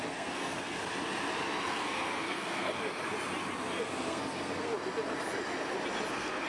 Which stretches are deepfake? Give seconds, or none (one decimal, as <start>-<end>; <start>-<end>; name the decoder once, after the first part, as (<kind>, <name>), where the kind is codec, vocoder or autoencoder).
0.0-0.8 (codec, SNAC); 1.7-2.8; 3.8-4.7; 6.1-6.5

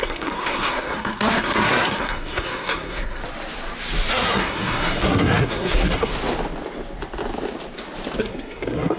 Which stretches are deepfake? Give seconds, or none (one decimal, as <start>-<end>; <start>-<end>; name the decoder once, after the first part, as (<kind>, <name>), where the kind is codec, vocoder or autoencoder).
0.0-3.2 (codec, SNAC); 4.1-6.1; 8.2-9.0

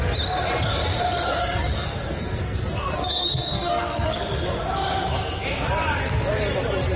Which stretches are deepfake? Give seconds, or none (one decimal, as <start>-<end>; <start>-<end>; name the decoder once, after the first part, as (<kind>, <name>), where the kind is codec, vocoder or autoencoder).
1.4-4.2 (codec, SNAC)

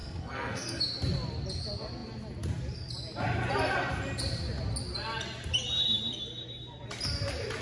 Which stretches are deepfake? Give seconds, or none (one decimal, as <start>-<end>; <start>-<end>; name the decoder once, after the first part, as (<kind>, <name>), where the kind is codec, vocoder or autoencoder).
0.0-0.8 (codec, SNAC)

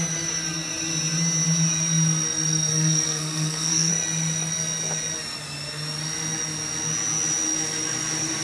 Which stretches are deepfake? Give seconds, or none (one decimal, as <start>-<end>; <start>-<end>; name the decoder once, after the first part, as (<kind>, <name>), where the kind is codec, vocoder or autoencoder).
2.7-3.9 (codec, SNAC)

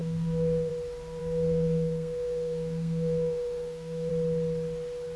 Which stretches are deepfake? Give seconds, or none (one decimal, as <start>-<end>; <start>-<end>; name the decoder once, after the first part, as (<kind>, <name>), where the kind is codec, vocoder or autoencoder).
0.0-0.7 (codec, SNAC); 1.2-4.1

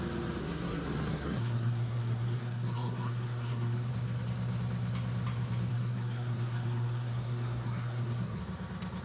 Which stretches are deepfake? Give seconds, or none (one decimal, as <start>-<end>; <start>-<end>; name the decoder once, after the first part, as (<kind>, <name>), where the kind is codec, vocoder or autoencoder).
0.4-3.9 (codec, SNAC); 5.7-8.4

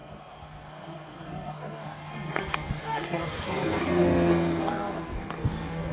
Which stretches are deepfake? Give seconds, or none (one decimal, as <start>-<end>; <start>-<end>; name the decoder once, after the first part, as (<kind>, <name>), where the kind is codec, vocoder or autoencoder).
0.0-5.9 (codec, SNAC)